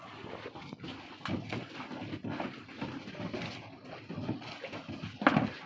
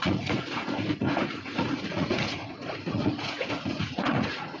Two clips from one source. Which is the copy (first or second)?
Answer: second